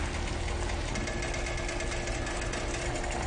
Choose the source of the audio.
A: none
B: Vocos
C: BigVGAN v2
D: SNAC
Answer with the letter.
A